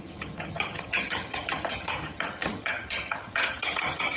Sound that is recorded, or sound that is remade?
remade